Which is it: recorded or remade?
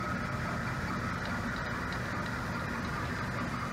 recorded